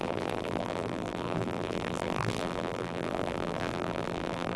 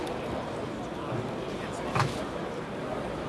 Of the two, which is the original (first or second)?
second